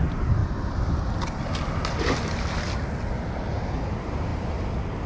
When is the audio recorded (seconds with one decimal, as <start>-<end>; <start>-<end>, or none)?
0.4-3.5